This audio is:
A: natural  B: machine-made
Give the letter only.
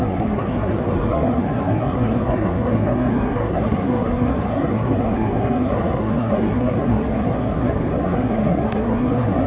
B